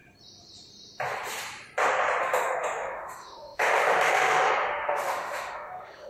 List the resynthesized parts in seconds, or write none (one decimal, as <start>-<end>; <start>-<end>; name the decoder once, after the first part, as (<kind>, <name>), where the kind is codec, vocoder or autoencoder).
2.2-6.1 (autoencoder, DAC-VAE)